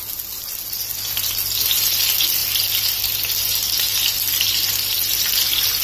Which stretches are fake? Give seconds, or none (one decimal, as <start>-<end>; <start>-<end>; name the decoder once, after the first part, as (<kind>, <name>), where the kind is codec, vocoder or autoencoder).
none